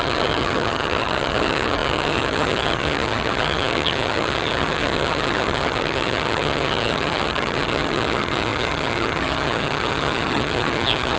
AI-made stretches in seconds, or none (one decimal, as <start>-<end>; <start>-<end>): 0.0-11.2